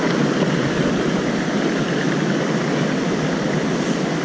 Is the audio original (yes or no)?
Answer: yes